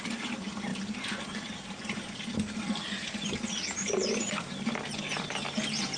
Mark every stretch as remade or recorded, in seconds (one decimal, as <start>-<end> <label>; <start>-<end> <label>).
0.0-6.0 recorded